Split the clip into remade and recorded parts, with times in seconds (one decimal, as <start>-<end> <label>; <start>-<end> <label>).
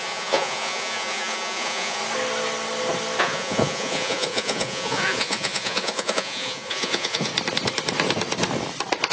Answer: 0.0-2.0 remade; 2.0-3.2 recorded; 3.2-7.3 remade; 7.3-9.1 recorded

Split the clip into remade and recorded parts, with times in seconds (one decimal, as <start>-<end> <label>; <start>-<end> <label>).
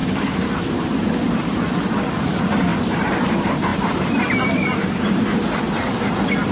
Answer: 0.0-1.1 remade; 1.1-2.7 recorded; 2.7-3.3 remade; 3.3-3.7 recorded; 3.7-5.2 remade; 5.2-6.5 recorded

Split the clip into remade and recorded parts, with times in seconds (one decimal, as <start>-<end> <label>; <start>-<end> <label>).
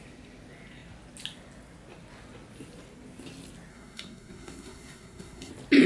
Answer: 0.0-3.7 recorded; 3.7-5.5 remade; 5.5-5.9 recorded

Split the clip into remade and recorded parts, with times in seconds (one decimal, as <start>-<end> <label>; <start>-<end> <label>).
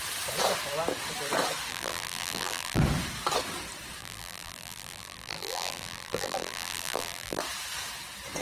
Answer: 0.0-1.7 recorded; 1.7-2.8 remade; 2.8-4.0 recorded; 4.0-7.4 remade; 7.4-8.4 recorded